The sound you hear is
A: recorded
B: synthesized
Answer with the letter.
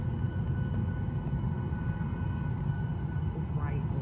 A